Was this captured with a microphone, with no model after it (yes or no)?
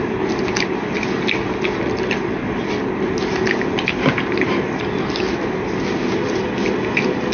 yes